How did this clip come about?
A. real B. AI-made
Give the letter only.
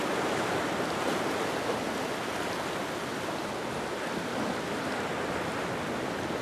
A